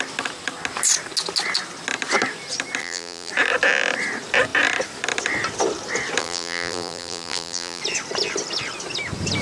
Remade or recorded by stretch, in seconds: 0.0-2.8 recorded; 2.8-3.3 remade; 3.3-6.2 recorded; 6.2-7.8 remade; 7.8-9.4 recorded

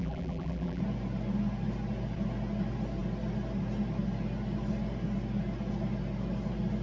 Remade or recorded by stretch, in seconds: 0.0-0.8 remade; 0.8-6.8 recorded

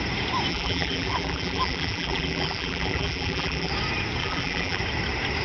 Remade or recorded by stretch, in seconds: 0.0-0.5 recorded; 0.5-3.7 remade; 3.7-4.2 recorded; 4.2-4.8 remade; 4.8-5.4 recorded

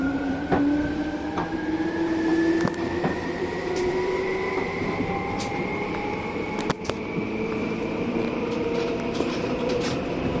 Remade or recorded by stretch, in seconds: 0.0-2.3 remade; 2.3-3.0 recorded; 3.0-10.4 remade